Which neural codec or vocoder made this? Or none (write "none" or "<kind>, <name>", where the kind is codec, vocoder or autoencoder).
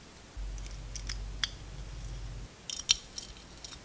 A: none